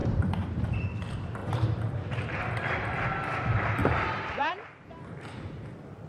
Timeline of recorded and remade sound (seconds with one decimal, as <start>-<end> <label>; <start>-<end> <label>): 0.0-0.6 remade; 0.6-1.4 recorded; 1.4-1.9 remade; 1.9-3.8 recorded; 3.8-4.5 remade; 4.5-6.1 recorded